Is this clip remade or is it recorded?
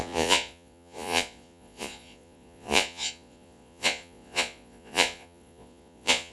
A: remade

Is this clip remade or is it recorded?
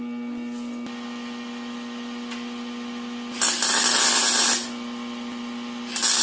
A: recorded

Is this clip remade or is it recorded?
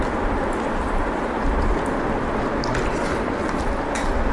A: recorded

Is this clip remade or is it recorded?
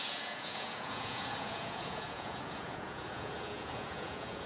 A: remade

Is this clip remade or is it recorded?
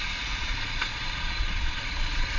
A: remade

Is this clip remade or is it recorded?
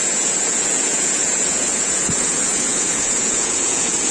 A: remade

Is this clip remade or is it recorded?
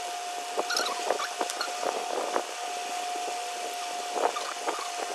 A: recorded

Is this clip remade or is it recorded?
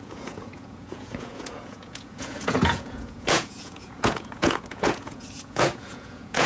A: remade